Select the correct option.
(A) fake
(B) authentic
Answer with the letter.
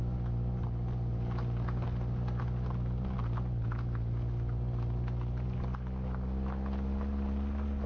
B